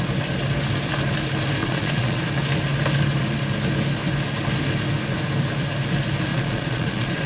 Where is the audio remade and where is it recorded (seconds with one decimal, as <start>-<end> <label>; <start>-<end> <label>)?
0.0-1.6 recorded; 1.6-2.2 remade; 2.2-6.3 recorded; 6.3-7.3 remade